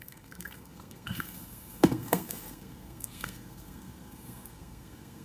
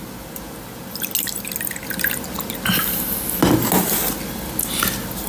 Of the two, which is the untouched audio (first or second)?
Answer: second